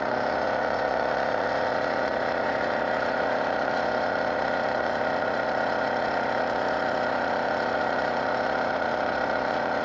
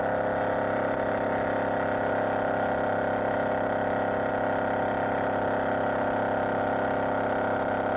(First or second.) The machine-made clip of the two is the first